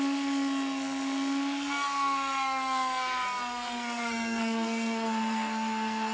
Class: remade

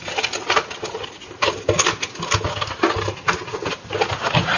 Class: recorded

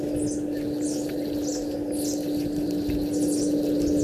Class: recorded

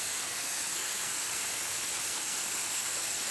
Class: remade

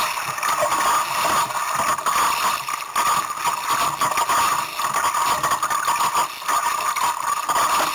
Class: recorded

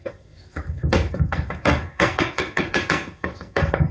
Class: remade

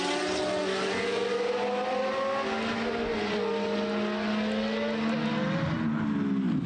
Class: recorded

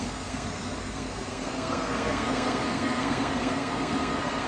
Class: remade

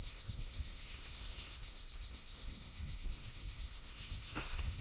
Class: remade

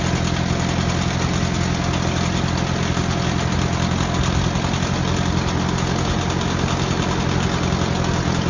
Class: recorded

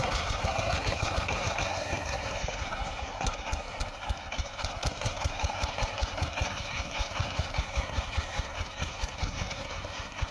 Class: remade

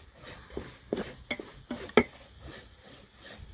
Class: recorded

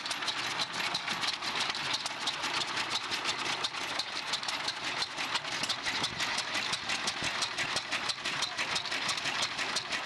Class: recorded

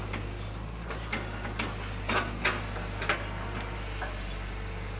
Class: recorded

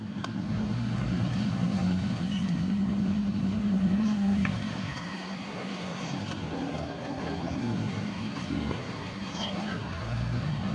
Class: remade